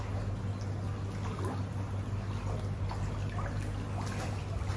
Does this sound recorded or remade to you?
recorded